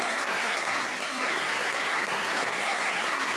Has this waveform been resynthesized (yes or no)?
yes